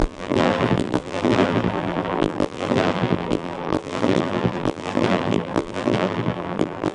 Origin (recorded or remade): remade